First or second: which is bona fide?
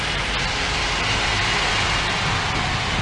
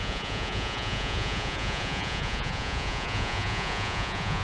first